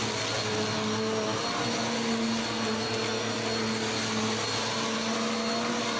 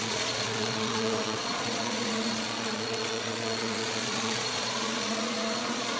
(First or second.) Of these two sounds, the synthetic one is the second